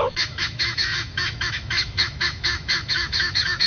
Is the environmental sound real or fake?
fake